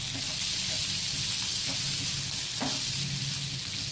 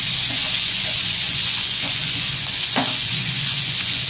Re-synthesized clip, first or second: second